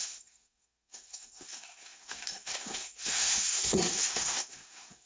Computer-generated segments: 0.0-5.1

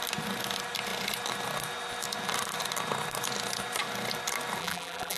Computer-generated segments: 4.6-5.2

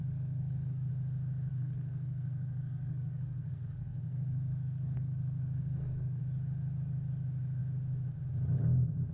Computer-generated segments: 0.0-0.9; 1.5-6.2

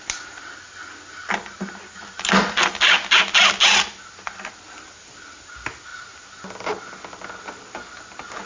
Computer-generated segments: none

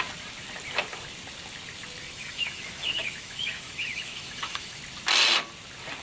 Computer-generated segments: 2.0-4.8

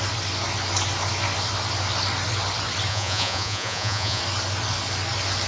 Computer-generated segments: 2.9-4.2

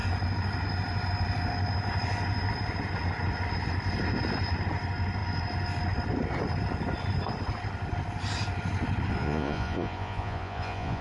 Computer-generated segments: 9.2-11.0